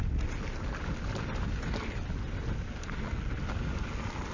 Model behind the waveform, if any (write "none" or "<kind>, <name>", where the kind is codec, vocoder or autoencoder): none